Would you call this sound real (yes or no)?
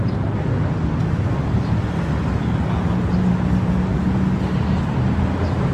yes